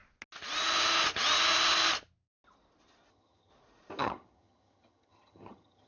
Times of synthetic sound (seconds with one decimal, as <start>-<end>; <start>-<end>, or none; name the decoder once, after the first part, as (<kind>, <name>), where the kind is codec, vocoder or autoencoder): 3.1-3.5 (vocoder, HiFi-GAN); 4.0-5.9